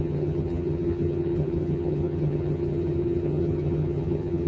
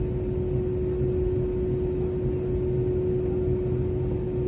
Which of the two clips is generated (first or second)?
first